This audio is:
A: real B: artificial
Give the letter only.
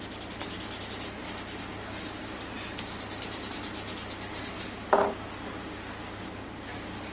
A